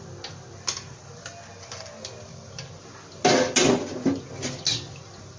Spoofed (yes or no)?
no